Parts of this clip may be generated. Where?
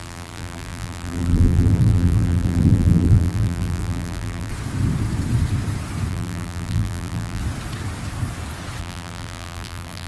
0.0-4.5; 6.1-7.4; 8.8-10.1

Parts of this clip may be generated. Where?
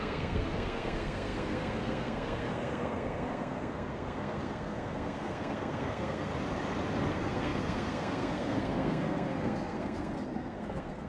0.0-6.3; 7.1-11.1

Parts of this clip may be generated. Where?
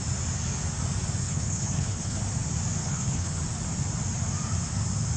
1.2-2.2; 2.8-3.4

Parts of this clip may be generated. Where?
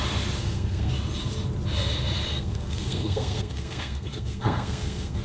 0.4-0.9; 2.3-5.2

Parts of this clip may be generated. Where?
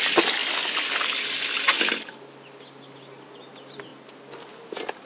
0.0-0.4; 3.5-3.9